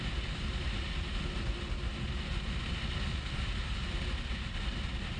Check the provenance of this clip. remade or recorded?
recorded